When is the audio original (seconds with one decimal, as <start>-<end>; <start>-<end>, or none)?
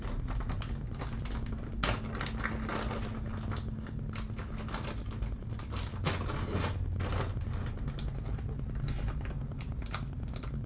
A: 0.0-10.7